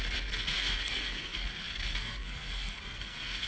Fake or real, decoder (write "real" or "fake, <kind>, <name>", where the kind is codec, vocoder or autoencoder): fake, codec, SNAC